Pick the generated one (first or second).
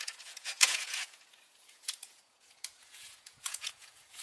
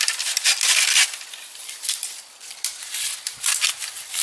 first